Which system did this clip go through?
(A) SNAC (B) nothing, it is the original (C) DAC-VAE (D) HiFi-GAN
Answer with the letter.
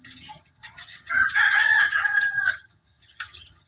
D